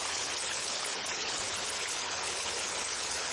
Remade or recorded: remade